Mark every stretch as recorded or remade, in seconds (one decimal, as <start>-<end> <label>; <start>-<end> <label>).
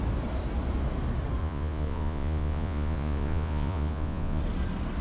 0.0-1.4 recorded; 1.4-4.4 remade; 4.4-5.0 recorded